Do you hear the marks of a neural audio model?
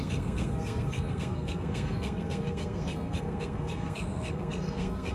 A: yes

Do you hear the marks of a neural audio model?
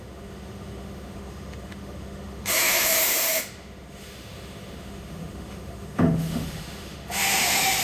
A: yes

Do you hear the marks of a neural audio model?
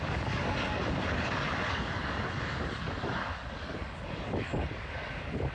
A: yes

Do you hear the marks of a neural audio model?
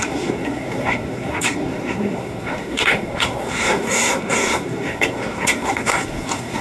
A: yes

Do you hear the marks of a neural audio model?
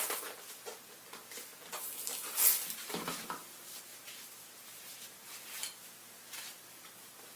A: no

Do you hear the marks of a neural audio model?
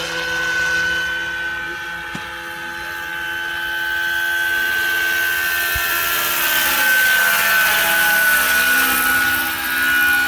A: no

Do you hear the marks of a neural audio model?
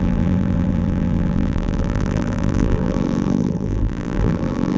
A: yes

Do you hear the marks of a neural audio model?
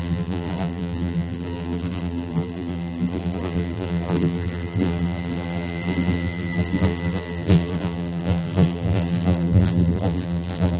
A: yes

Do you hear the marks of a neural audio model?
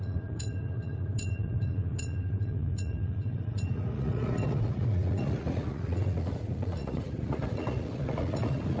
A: yes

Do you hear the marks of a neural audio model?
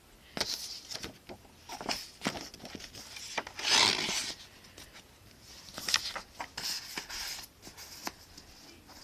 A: no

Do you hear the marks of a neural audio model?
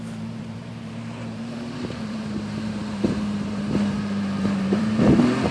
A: yes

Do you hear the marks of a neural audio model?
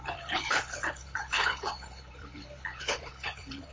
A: yes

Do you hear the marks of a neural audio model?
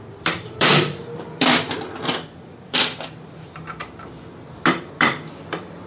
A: yes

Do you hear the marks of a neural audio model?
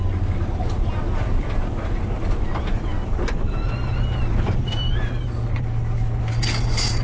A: no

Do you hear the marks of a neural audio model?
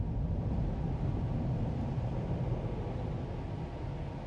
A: no